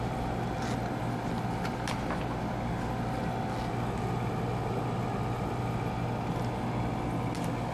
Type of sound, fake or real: real